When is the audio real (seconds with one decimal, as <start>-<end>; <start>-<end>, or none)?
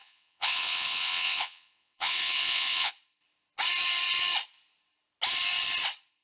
2.9-6.2